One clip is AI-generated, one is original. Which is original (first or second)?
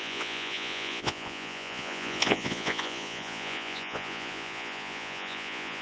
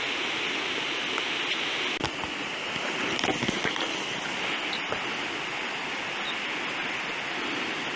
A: second